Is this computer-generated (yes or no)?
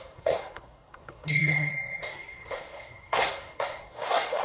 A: yes